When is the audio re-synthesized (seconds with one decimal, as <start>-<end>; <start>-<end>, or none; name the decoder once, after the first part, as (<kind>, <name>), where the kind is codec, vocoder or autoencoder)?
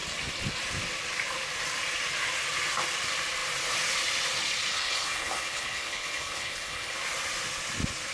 4.7-7.0 (codec, HILCodec)